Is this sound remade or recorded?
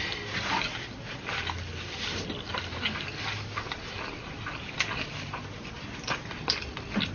recorded